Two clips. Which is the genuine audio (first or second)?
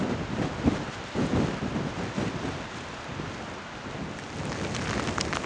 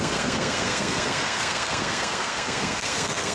first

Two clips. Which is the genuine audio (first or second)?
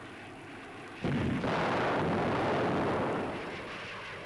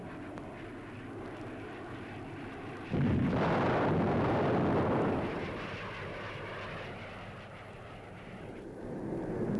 first